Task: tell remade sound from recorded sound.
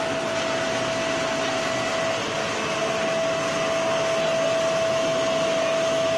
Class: recorded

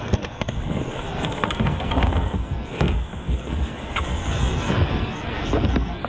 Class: remade